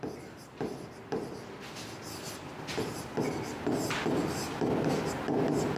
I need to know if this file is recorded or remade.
recorded